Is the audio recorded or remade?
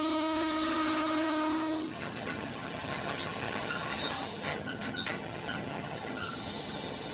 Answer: remade